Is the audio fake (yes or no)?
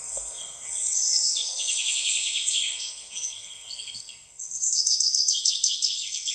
yes